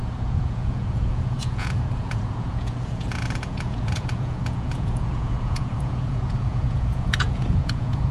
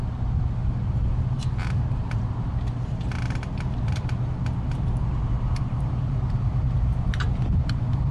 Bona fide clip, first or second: second